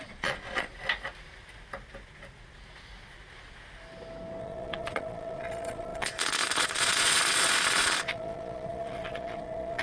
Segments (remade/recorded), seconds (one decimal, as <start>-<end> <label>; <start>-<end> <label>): 0.0-0.7 remade; 0.7-4.4 recorded; 4.4-9.8 remade